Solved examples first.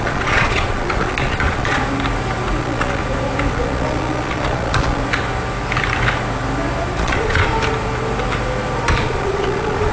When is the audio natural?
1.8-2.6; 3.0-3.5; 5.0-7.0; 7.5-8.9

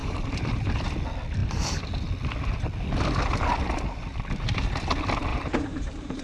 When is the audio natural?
0.8-5.3

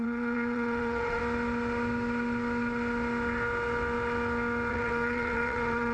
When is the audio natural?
1.2-4.7

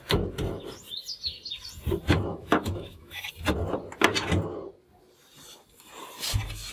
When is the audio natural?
0.0-2.3; 3.3-6.7

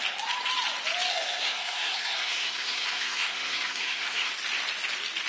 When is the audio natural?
0.0-1.1; 4.3-5.3